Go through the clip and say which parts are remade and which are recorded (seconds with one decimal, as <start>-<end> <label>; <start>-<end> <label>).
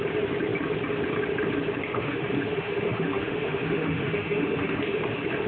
0.0-1.9 recorded; 1.9-5.0 remade; 5.0-5.5 recorded